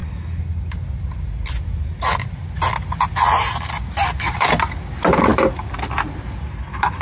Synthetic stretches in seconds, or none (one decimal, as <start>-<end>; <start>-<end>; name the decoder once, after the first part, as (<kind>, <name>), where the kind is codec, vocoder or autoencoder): none

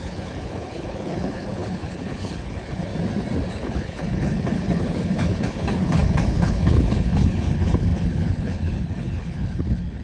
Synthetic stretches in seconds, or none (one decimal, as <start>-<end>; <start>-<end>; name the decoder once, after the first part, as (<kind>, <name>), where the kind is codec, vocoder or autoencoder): 0.0-2.9 (codec, HILCodec); 3.5-10.0

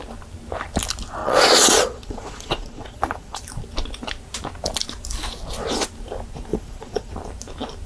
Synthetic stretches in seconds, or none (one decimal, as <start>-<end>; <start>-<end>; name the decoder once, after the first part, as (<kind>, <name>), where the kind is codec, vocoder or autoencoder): 1.2-3.4 (vocoder, Vocos); 6.5-7.1

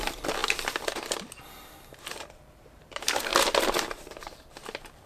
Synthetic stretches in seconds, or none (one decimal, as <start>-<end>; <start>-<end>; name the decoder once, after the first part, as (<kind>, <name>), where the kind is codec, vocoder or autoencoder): 0.0-0.4 (vocoder, BigVGAN v2); 1.5-5.1

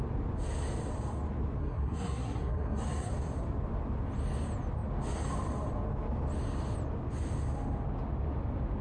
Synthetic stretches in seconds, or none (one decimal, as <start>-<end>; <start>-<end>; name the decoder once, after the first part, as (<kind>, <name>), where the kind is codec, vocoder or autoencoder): 1.6-3.1 (codec, SNAC)

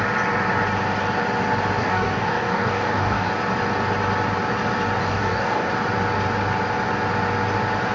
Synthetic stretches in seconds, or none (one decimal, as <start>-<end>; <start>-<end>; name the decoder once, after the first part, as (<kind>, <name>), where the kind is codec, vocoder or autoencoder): 1.8-3.3 (codec, DAC); 5.0-5.7

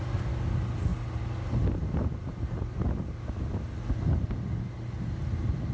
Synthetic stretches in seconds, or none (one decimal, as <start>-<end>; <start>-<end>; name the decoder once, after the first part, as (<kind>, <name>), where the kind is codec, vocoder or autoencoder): none